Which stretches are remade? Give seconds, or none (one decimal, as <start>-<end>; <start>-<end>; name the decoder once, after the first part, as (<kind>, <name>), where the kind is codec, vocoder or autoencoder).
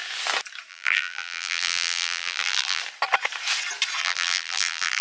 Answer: 0.7-2.8 (vocoder, BigVGAN v2); 4.0-5.0